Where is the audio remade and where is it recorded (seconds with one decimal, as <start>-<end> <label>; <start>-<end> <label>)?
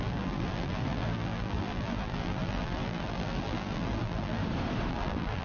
0.0-4.4 remade; 4.4-4.9 recorded; 4.9-5.4 remade